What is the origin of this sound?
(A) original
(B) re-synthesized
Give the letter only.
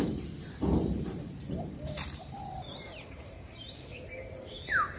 B